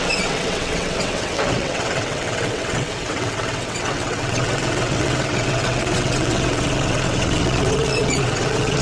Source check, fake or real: fake